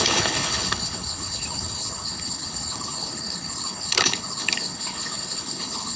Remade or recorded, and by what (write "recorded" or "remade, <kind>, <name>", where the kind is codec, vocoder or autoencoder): remade, codec, HILCodec